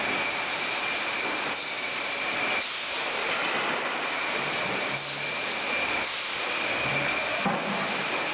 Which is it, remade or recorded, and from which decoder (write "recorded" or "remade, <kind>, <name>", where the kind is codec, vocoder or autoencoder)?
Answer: recorded